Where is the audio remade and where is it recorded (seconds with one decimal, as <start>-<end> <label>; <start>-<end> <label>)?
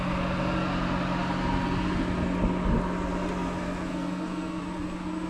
0.0-3.9 recorded; 3.9-4.6 remade; 4.6-5.3 recorded